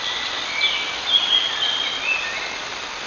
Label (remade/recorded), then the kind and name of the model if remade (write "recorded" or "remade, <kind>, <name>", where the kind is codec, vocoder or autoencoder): recorded